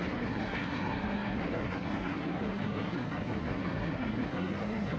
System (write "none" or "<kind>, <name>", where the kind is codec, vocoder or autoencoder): codec, SNAC